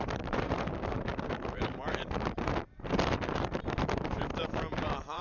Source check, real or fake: fake